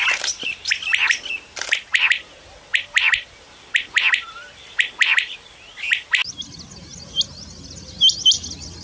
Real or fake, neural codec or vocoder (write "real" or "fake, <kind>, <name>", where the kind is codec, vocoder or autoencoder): real